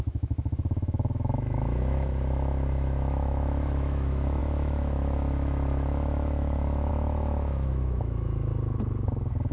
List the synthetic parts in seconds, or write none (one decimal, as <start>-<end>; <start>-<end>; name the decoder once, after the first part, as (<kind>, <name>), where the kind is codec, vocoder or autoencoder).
0.0-8.5 (autoencoder, DAC-VAE)